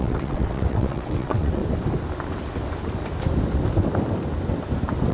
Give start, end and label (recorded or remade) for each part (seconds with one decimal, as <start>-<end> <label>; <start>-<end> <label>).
0.0-1.6 remade; 1.6-5.1 recorded